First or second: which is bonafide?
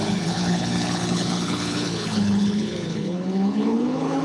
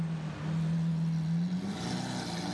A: second